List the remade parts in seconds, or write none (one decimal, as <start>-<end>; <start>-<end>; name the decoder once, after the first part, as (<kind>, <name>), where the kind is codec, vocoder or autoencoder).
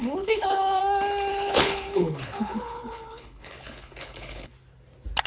0.0-0.8 (codec, HILCodec); 1.3-4.5